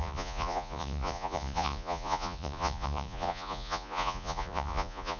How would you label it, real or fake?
fake